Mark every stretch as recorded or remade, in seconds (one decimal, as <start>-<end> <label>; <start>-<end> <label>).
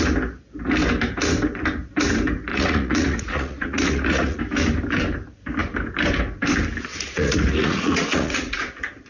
0.0-2.5 recorded; 2.5-4.4 remade; 4.4-6.9 recorded; 6.9-8.7 remade; 8.7-9.1 recorded